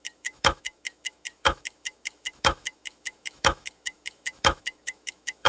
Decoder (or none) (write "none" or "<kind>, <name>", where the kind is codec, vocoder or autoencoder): autoencoder, DAC-VAE